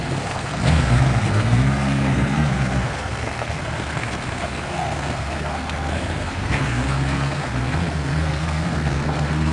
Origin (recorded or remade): remade